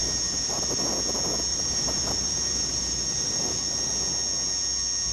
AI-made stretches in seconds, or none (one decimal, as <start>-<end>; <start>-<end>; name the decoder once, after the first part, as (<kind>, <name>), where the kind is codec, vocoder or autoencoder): 0.0-0.9 (vocoder, BigVGAN v2); 1.5-3.9